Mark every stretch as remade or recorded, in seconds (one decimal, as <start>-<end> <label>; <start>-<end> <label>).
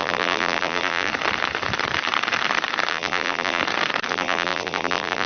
0.0-1.1 remade; 1.1-2.9 recorded; 2.9-3.6 remade; 3.6-4.1 recorded; 4.1-5.3 remade